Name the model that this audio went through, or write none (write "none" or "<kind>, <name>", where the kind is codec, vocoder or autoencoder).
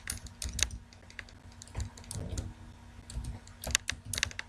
none